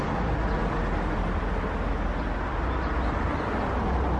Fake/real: real